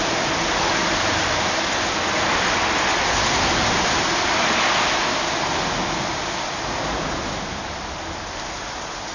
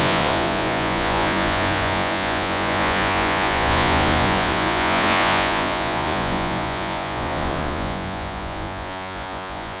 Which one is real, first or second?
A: first